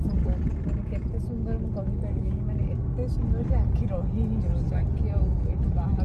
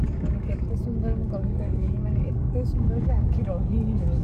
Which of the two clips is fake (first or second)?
second